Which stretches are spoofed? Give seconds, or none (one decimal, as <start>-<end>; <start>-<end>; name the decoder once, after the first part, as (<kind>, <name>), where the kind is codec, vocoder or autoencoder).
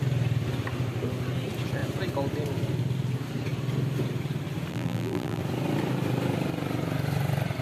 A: 4.7-5.4 (vocoder, BigVGAN v2)